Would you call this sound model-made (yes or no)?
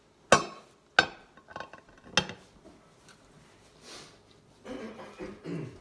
no